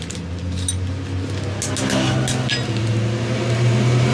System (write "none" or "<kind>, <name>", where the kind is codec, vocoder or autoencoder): none